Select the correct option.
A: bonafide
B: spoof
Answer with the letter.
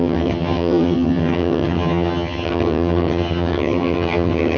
B